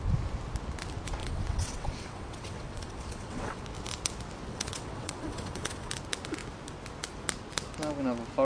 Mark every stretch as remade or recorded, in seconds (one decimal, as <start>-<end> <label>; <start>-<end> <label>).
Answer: 0.0-1.2 recorded; 1.2-3.6 remade; 3.6-4.5 recorded; 4.5-5.9 remade; 5.9-8.4 recorded